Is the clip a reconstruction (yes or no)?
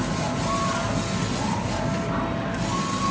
no